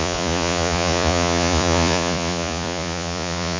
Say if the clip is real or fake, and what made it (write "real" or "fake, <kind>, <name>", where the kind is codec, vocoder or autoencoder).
fake, vocoder, Vocos